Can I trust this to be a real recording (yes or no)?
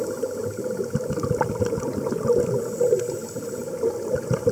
yes